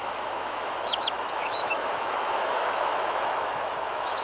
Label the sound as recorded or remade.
remade